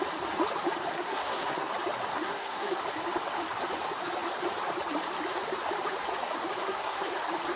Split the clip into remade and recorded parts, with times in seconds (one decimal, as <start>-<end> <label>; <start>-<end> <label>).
0.0-0.9 recorded; 0.9-1.7 remade; 1.7-2.1 recorded; 2.1-2.8 remade; 2.8-6.6 recorded; 6.6-7.1 remade; 7.1-7.6 recorded